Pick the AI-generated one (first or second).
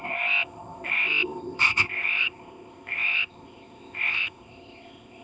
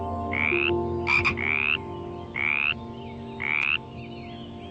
first